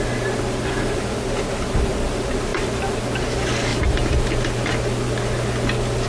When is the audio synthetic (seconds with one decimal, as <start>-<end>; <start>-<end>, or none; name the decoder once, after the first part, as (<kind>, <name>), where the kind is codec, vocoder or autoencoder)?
2.5-3.0 (vocoder, BigVGAN v2); 3.7-4.2